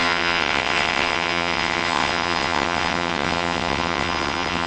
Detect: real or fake fake